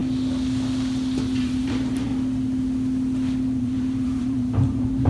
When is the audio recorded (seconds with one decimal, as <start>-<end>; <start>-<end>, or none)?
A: 0.0-1.4; 2.1-3.6